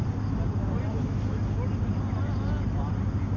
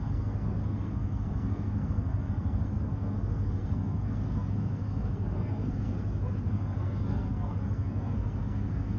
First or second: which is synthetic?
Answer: second